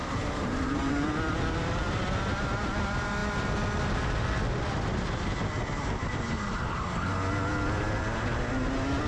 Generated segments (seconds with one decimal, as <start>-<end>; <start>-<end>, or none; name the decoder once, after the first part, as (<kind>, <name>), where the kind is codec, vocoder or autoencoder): 0.0-1.1 (vocoder, BigVGAN v2)